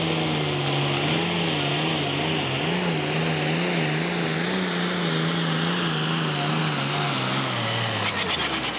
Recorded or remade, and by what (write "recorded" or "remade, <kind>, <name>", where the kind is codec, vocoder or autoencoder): recorded